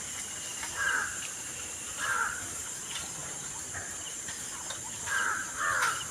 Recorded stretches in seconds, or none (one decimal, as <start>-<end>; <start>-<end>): 0.0-0.5; 2.8-3.2; 5.6-6.1